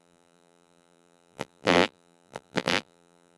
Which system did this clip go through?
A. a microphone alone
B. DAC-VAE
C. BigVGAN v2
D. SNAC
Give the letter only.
C